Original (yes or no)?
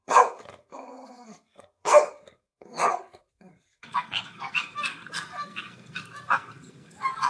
no